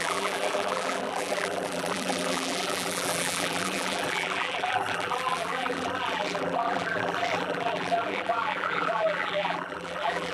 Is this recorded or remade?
remade